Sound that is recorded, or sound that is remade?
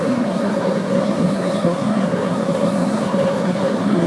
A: remade